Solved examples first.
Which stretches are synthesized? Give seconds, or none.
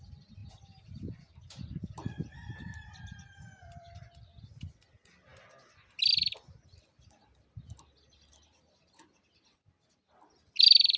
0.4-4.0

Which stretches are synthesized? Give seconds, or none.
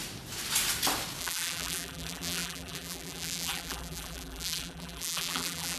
1.2-5.8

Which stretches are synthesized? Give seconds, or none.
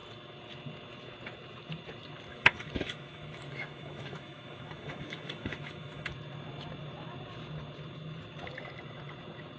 2.3-6.1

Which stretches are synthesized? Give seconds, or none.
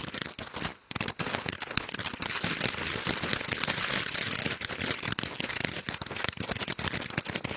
none